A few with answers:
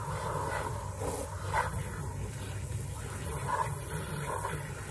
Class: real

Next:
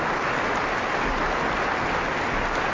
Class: real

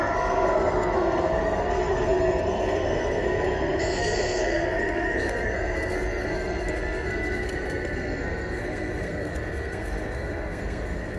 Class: fake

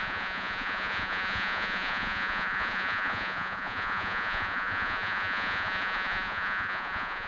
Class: fake